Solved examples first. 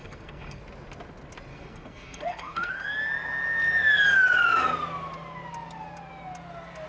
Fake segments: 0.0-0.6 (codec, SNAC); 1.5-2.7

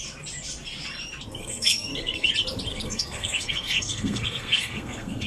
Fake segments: 1.4-2.3 (codec, SNAC); 2.7-5.3